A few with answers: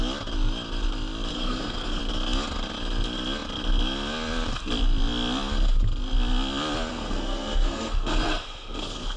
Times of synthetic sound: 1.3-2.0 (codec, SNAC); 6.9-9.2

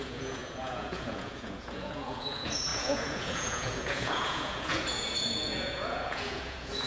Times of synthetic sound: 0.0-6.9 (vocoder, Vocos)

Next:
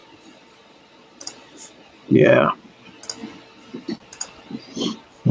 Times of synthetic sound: 0.0-2.5 (vocoder, Vocos)

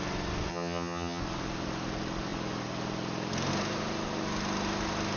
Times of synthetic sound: 0.5-1.2 (vocoder, HiFi-GAN)

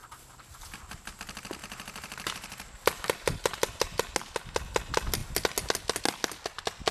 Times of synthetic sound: 0.0-1.1 (vocoder, BigVGAN v2); 1.6-4.1

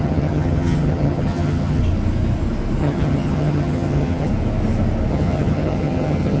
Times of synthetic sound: 0.0-1.8 (vocoder, HiFi-GAN); 2.8-4.3; 5.1-6.4

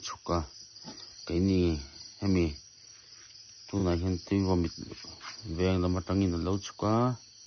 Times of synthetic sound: none

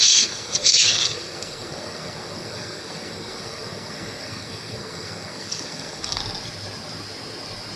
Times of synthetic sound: 0.0-6.2 (codec, SNAC)